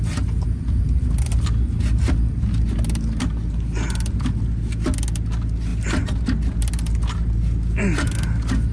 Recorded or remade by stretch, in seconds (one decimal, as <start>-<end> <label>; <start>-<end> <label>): 0.0-8.7 recorded